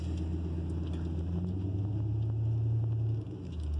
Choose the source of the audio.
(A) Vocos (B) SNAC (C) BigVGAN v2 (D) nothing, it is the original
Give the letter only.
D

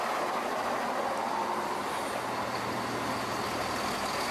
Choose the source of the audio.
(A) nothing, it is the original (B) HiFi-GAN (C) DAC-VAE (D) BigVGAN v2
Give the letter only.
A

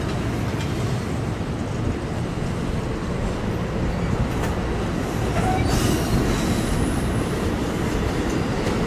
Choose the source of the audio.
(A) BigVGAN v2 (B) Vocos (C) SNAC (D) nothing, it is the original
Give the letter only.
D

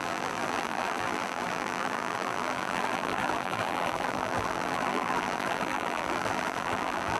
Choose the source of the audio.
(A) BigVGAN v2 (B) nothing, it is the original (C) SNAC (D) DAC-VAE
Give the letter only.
A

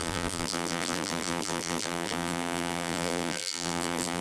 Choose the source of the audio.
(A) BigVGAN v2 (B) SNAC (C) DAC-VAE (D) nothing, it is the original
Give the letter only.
A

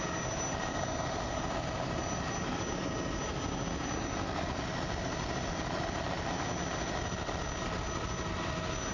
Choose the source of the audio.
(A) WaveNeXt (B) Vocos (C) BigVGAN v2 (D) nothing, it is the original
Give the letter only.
D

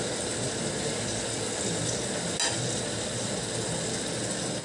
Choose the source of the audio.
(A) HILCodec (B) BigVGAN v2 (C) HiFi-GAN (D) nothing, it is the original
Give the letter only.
D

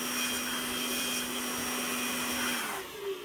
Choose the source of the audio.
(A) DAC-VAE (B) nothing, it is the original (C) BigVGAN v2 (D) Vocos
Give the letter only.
B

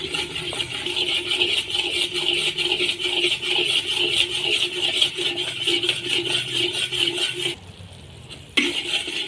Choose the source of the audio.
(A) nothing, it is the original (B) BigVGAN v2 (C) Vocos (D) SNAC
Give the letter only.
A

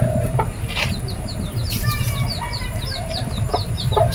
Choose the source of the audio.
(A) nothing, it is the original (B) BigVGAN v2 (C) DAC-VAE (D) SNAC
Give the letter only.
B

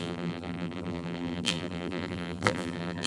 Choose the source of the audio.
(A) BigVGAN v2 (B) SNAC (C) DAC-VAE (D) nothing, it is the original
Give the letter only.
A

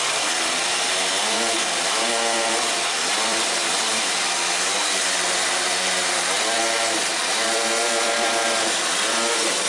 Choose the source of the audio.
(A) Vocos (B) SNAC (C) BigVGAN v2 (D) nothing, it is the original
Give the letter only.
C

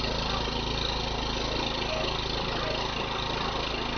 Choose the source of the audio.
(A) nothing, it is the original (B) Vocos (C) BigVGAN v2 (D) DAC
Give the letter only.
A